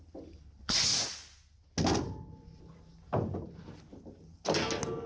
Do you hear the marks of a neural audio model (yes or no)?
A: no